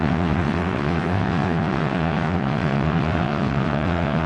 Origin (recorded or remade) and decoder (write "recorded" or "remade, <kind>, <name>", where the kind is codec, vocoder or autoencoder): remade, vocoder, WaveNeXt